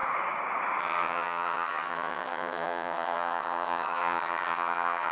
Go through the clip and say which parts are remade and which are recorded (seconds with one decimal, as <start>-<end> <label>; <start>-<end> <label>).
0.0-0.8 recorded; 0.8-5.1 remade